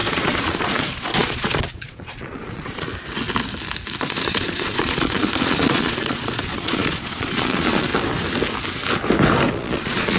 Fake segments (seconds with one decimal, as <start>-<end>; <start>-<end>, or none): 0.0-2.9; 4.0-7.9; 9.5-10.2